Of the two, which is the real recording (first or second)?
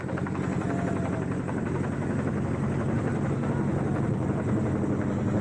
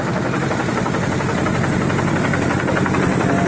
first